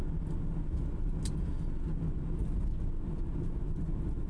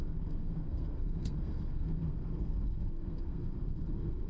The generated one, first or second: second